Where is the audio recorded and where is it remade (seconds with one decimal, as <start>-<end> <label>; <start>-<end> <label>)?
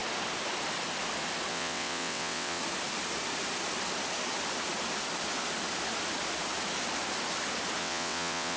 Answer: 0.0-1.5 recorded; 1.5-2.6 remade; 2.6-7.8 recorded; 7.8-8.6 remade